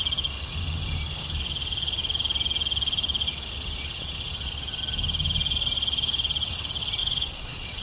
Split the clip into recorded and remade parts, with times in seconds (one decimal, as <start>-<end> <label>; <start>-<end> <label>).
0.0-7.0 recorded; 7.0-7.8 remade